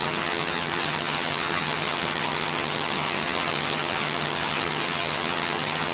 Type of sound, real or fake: fake